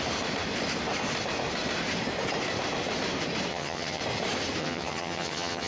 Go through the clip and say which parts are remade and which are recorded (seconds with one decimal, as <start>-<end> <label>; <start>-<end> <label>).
0.0-3.5 recorded; 3.5-4.0 remade; 4.0-4.6 recorded; 4.6-5.7 remade